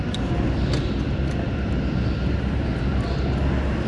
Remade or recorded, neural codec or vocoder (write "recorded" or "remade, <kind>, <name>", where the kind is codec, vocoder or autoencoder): recorded